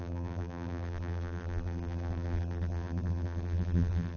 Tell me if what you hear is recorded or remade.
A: remade